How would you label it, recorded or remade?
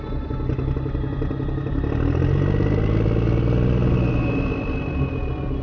recorded